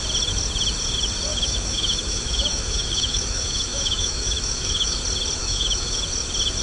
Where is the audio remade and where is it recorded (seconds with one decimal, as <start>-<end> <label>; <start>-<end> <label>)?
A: 0.0-1.3 recorded; 1.3-5.0 remade; 5.0-5.4 recorded; 5.4-6.0 remade; 6.0-6.6 recorded